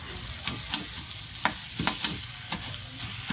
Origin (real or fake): real